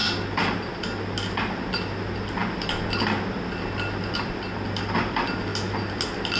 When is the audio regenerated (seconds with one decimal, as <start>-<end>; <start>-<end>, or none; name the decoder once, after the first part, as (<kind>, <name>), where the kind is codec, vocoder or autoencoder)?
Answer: none